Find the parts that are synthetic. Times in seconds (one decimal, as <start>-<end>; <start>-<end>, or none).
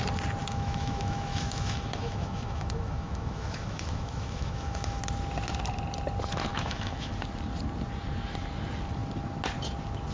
0.4-5.0; 6.5-7.1